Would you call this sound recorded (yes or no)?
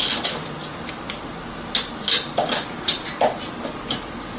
yes